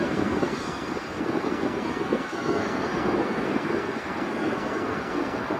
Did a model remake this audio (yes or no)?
yes